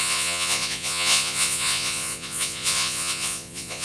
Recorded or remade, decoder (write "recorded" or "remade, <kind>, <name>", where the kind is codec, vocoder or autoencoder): remade, vocoder, Vocos